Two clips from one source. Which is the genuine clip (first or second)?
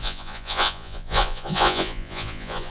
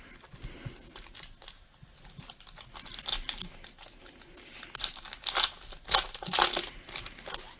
second